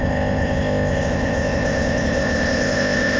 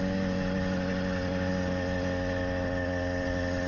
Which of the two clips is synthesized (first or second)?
first